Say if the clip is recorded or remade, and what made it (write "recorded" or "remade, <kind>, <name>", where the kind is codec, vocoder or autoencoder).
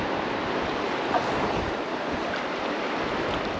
recorded